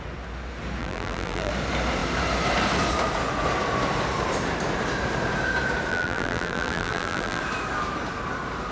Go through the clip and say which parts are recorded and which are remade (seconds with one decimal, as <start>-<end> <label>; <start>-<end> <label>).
0.0-0.8 recorded; 0.8-1.5 remade; 1.5-5.9 recorded; 5.9-7.4 remade; 7.4-8.7 recorded